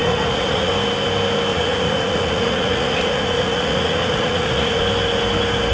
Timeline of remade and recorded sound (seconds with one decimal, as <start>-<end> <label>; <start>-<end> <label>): 0.0-0.7 remade; 0.7-1.5 recorded; 1.5-4.8 remade; 4.8-5.7 recorded